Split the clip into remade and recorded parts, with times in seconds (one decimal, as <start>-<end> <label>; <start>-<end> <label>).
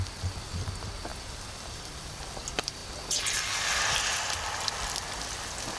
0.0-5.8 recorded